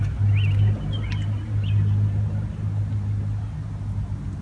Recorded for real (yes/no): yes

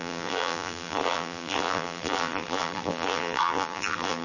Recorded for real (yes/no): no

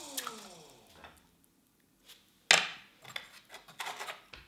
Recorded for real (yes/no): yes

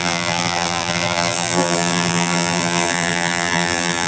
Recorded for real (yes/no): no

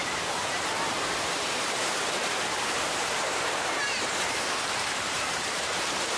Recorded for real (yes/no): no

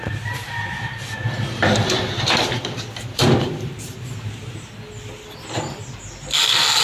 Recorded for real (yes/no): no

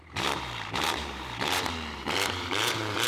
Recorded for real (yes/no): no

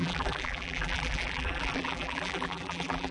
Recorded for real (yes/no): no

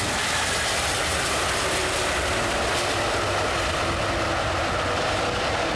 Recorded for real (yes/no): yes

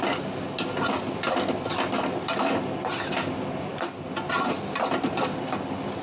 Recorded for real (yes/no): yes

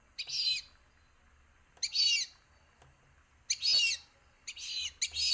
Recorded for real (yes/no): yes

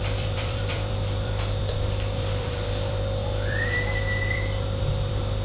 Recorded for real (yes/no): no